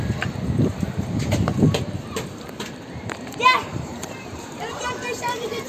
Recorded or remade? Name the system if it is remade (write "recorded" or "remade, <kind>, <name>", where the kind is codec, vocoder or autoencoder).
remade, vocoder, BigVGAN v2